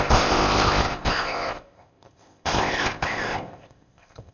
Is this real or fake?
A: fake